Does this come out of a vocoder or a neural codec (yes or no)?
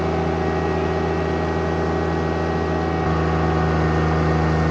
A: no